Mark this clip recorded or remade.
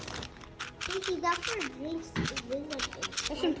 recorded